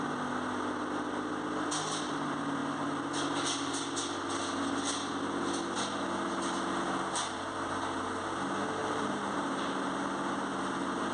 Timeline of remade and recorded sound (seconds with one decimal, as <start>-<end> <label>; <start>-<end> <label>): 0.0-8.8 recorded; 8.8-9.6 remade; 9.6-11.1 recorded